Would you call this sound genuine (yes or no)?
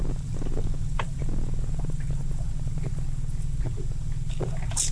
yes